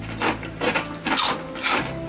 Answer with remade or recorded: recorded